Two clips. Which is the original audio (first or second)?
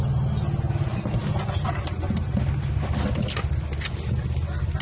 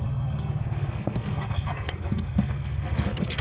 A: first